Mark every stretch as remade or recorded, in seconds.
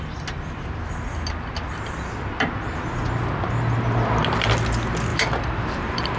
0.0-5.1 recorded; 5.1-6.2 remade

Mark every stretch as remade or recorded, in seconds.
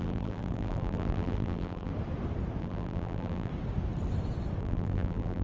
0.0-1.9 remade; 1.9-2.6 recorded; 2.6-3.5 remade; 3.5-4.6 recorded; 4.6-5.4 remade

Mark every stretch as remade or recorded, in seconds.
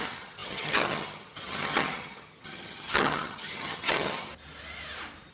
0.0-4.3 remade; 4.3-5.3 recorded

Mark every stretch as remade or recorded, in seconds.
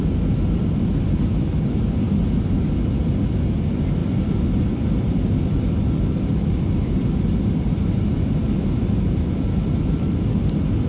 0.0-10.9 remade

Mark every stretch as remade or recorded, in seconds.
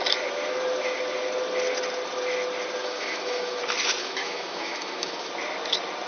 0.0-2.8 recorded; 2.8-3.6 remade; 3.6-4.0 recorded; 4.0-5.3 remade; 5.3-6.1 recorded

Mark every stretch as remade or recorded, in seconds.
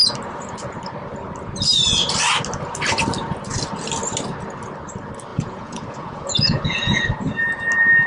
0.0-5.3 recorded; 5.3-7.0 remade; 7.0-8.1 recorded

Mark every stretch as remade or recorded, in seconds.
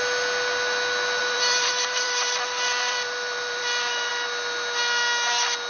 0.0-1.2 recorded; 1.2-4.1 remade; 4.1-5.7 recorded